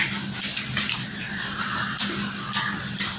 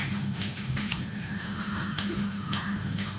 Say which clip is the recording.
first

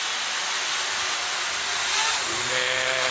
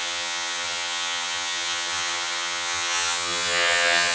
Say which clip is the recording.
first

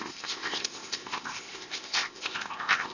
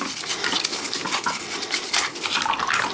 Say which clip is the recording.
second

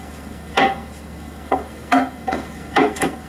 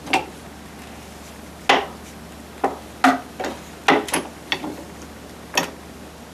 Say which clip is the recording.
second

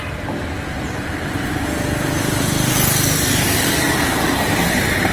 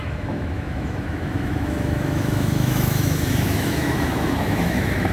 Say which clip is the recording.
first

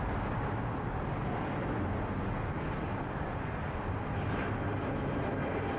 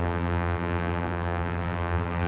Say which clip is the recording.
first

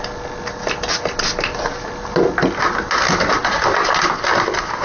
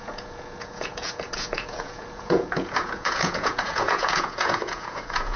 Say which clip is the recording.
first